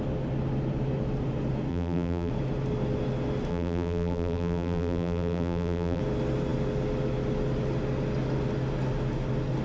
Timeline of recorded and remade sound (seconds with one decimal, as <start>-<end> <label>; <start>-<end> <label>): 0.0-1.7 recorded; 1.7-2.3 remade; 2.3-3.5 recorded; 3.5-6.0 remade; 6.0-9.6 recorded